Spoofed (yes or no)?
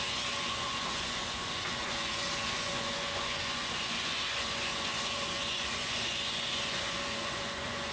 yes